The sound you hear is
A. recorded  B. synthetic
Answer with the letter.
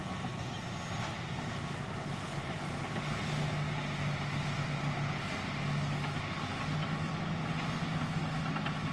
A